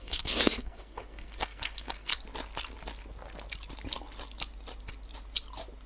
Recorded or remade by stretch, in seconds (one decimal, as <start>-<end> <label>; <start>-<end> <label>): 0.0-2.1 remade; 2.1-5.9 recorded